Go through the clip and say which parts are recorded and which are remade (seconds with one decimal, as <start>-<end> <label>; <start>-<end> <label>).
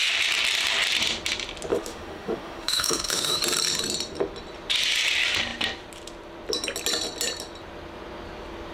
0.0-1.7 recorded; 1.7-3.4 remade; 3.4-8.7 recorded